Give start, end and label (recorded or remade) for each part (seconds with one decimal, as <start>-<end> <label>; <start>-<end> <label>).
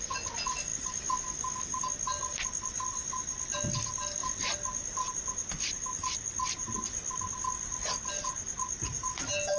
0.0-9.6 recorded